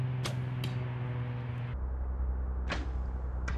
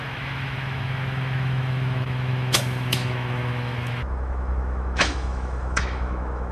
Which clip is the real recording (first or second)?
first